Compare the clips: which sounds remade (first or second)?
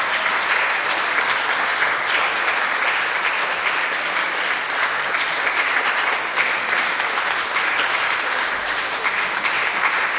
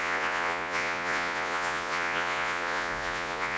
second